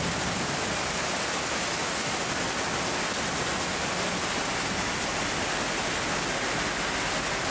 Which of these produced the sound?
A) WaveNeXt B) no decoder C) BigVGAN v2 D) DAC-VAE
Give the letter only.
B